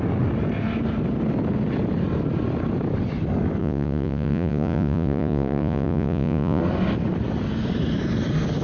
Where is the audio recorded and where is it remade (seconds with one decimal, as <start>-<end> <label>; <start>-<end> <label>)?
0.0-3.6 recorded; 3.6-6.6 remade; 6.6-8.6 recorded

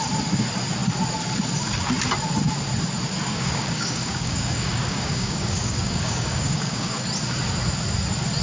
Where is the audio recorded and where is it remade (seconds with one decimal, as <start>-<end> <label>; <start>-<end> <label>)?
0.0-3.3 recorded; 3.3-7.0 remade; 7.0-8.4 recorded